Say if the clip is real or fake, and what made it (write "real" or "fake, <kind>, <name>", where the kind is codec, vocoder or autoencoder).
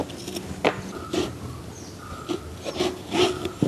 real